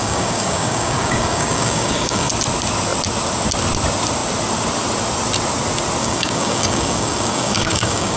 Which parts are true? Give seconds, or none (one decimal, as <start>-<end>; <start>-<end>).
2.3-6.0